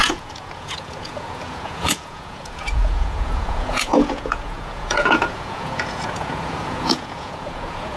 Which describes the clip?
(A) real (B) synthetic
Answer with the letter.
B